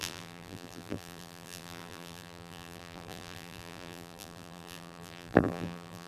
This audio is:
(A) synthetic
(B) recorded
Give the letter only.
A